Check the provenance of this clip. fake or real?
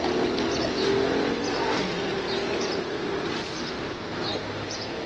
real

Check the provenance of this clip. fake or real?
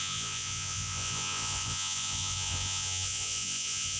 fake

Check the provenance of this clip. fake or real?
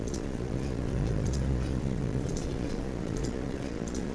fake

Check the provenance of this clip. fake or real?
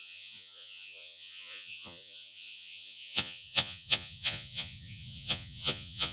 fake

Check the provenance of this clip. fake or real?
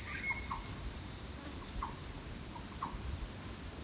real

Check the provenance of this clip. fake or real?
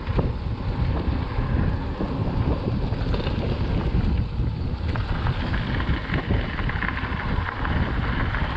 real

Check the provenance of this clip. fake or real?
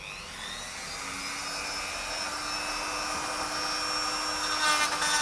real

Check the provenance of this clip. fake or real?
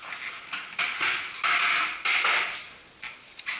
real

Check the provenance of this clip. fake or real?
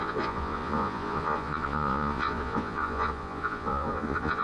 fake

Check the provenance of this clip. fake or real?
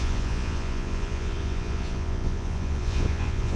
fake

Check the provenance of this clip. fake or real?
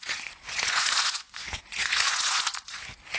fake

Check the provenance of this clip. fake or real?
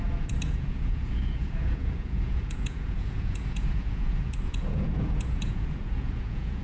fake